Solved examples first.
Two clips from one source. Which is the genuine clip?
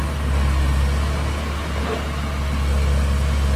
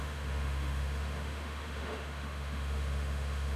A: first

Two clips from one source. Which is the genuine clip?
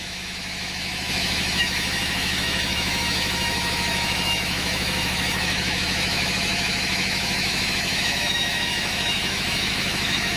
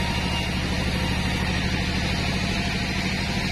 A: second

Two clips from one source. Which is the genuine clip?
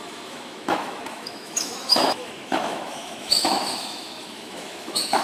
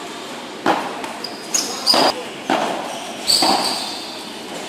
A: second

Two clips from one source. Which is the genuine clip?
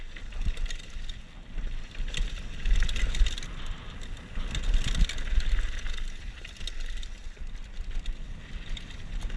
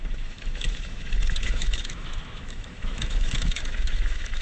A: first